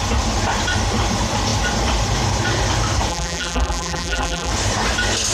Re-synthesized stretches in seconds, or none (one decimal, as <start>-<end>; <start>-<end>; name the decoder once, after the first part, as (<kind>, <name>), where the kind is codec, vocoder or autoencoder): 3.1-4.5 (vocoder, BigVGAN v2)